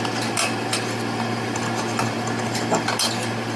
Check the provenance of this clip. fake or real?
real